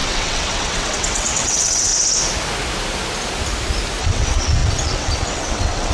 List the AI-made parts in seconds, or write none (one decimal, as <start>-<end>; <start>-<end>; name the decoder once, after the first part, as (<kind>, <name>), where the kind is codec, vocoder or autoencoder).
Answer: 0.0-1.9 (vocoder, WaveNeXt); 4.0-5.9